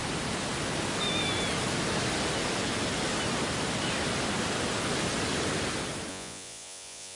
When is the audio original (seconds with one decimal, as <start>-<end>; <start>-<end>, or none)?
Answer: 0.0-6.1